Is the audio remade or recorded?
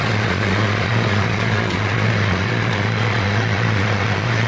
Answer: remade